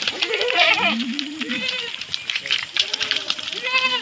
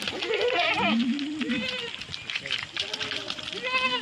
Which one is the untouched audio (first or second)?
second